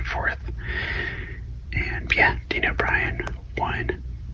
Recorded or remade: remade